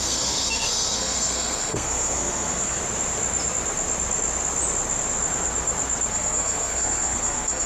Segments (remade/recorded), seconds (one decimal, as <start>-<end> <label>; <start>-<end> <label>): 0.0-2.8 remade; 2.8-6.1 recorded; 6.1-7.7 remade